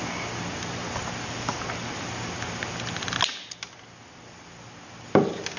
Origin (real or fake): real